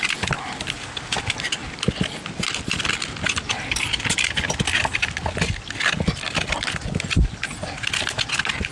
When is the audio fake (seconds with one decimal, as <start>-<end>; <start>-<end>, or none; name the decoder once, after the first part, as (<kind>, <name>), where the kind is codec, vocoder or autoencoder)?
none